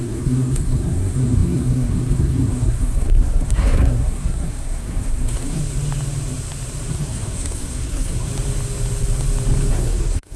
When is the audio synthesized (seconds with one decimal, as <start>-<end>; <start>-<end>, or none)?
0.0-5.6; 6.9-8.3; 9.7-10.4